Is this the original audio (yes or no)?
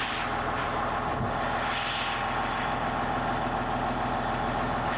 yes